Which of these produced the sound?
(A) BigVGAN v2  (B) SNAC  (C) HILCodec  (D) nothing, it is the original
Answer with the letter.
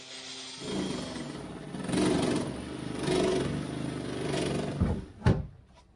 D